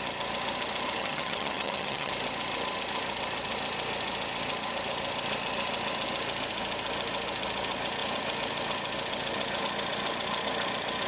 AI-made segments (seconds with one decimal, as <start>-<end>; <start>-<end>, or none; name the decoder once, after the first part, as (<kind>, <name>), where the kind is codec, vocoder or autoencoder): 1.0-2.1 (vocoder, HiFi-GAN)